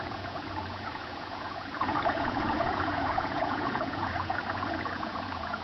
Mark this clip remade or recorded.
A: remade